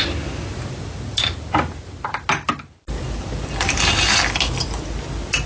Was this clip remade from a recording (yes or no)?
no